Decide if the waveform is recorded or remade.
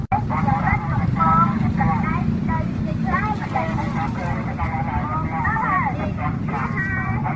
recorded